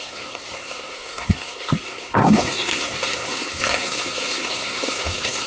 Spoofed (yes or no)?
yes